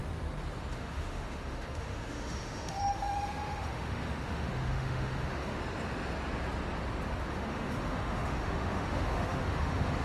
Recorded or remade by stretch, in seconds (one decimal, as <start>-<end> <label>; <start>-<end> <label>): 0.0-0.7 recorded; 0.7-5.6 remade; 5.6-7.3 recorded; 7.3-10.0 remade